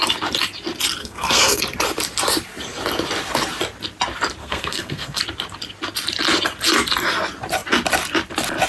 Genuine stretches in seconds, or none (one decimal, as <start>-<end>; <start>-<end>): 0.0-1.0; 1.6-4.4; 5.2-8.7